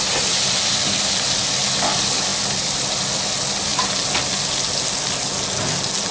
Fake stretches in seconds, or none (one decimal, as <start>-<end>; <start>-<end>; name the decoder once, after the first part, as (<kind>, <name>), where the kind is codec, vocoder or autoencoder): none